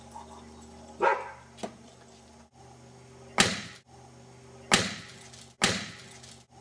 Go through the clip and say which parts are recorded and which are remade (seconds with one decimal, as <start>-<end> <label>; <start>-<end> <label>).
0.0-6.6 recorded